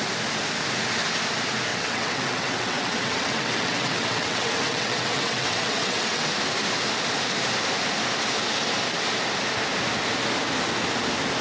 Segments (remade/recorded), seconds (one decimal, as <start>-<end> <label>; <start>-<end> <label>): 0.0-1.7 recorded; 1.7-6.3 remade; 6.3-11.4 recorded